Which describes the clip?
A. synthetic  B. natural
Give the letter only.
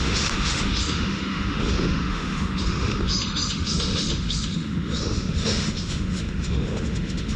A